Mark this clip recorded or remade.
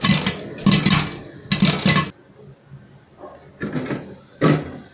recorded